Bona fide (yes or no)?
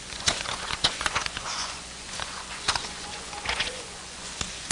no